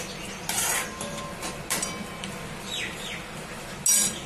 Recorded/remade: recorded